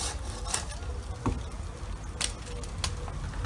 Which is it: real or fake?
real